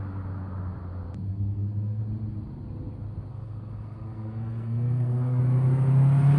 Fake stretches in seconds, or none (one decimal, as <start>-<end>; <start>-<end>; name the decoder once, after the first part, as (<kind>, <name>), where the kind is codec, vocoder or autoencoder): 1.3-2.0 (codec, SNAC); 3.3-5.4